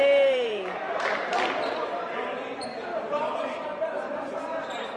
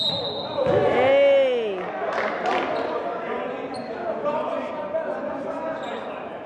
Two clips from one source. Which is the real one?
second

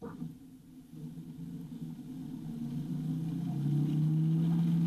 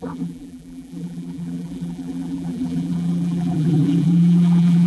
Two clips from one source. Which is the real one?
first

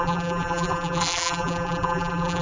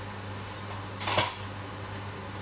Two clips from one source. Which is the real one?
second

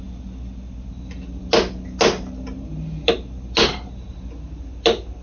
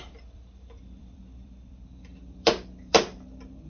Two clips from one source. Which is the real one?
first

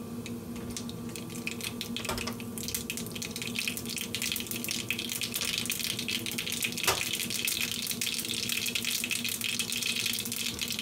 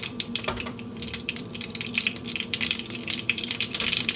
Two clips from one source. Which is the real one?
first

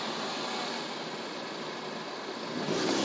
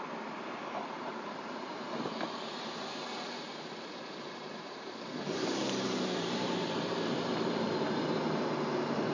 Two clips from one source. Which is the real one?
first